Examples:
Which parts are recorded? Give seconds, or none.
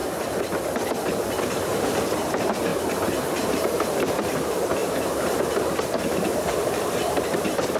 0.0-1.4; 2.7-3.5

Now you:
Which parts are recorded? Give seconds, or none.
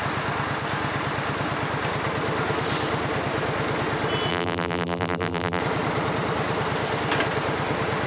0.0-4.3; 5.6-8.1